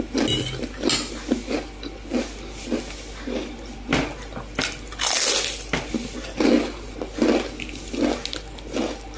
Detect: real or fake real